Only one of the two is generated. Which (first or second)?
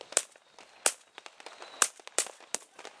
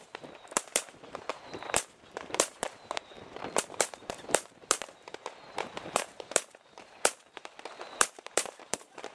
second